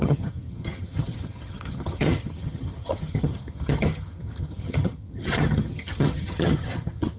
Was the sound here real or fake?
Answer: fake